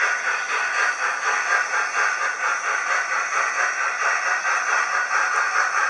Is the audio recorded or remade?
recorded